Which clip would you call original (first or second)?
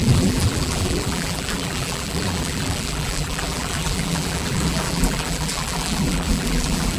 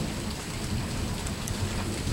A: second